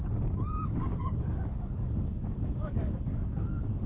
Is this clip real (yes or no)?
no